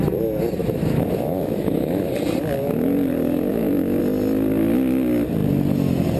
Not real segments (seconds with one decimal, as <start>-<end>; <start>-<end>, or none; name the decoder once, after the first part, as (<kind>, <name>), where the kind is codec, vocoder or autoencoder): 0.6-2.1 (autoencoder, DAC-VAE); 3.5-4.0